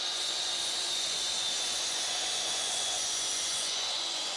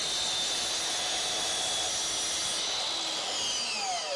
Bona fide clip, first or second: second